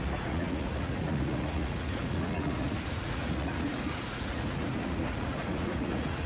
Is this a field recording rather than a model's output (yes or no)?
no